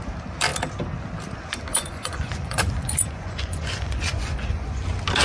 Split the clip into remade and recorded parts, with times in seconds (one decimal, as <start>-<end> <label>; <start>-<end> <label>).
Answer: 0.0-1.7 recorded; 1.7-4.8 remade; 4.8-5.2 recorded